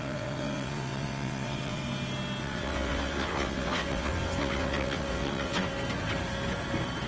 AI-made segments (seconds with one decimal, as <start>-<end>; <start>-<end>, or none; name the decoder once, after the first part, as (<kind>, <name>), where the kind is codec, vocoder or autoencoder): 0.0-1.8 (vocoder, WaveNeXt); 2.4-5.7